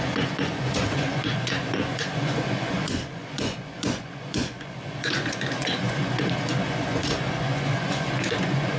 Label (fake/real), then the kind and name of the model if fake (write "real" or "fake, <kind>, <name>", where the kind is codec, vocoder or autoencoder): fake, vocoder, Vocos